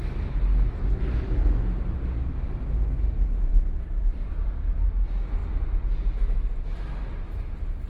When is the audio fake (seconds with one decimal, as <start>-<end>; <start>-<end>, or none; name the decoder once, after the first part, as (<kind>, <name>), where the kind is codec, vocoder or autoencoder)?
3.5-4.9 (vocoder, BigVGAN v2)